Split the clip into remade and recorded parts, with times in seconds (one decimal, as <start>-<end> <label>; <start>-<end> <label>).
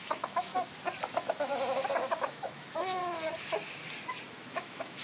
0.0-0.5 remade; 0.5-1.1 recorded; 1.1-1.5 remade; 1.5-2.2 recorded; 2.2-3.0 remade; 3.0-4.3 recorded; 4.3-5.0 remade